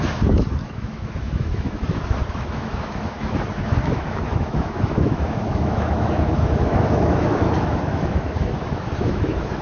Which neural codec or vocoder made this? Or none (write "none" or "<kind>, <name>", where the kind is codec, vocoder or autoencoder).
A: autoencoder, DAC-VAE